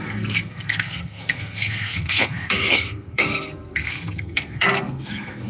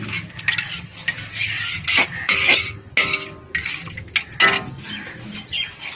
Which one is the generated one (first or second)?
first